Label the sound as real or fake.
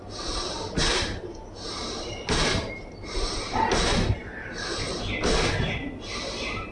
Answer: real